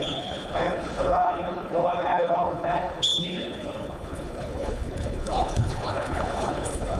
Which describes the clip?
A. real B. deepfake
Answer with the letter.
B